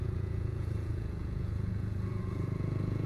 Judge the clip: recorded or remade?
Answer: remade